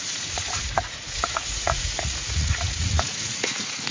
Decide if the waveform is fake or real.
fake